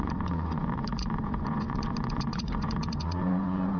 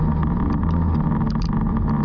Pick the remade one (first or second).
first